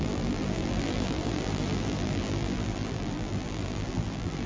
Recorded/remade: remade